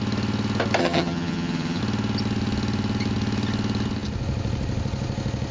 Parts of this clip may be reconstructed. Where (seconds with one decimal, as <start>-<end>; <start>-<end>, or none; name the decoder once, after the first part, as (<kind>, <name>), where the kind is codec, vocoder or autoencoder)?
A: 0.8-1.8 (vocoder, HiFi-GAN)